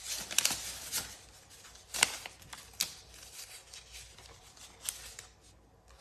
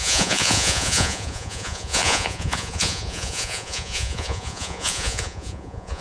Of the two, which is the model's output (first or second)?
second